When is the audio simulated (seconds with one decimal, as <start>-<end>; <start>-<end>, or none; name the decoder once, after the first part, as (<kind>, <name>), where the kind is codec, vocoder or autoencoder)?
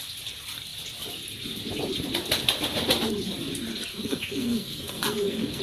3.9-5.6 (codec, SNAC)